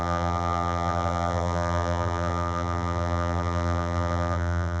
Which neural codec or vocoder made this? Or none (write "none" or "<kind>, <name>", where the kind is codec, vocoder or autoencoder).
vocoder, BigVGAN v2